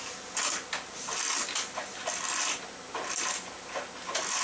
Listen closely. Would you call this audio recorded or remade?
recorded